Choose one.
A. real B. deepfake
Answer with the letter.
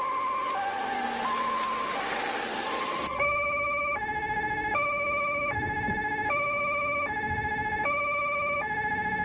A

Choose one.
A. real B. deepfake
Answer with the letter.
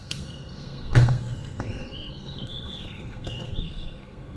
B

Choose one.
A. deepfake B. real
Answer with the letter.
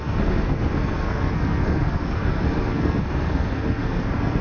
A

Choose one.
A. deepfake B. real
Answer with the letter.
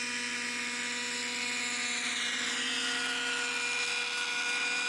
B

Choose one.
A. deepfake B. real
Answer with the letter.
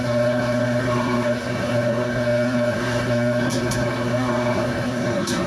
A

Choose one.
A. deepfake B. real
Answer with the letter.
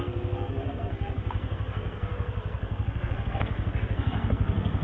A